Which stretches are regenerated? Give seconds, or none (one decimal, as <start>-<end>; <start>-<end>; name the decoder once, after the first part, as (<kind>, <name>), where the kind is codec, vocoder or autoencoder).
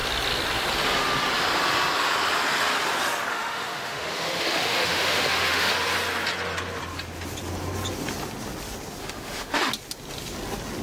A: 3.3-5.7 (autoencoder, DAC-VAE); 9.0-9.7